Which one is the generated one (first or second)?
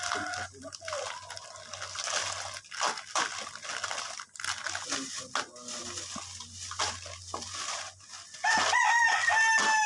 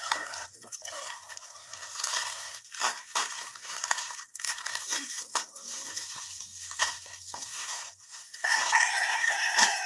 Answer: second